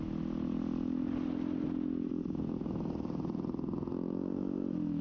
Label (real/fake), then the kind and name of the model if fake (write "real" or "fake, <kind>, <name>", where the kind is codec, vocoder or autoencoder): real